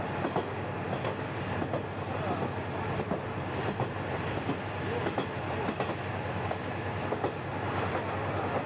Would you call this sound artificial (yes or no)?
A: no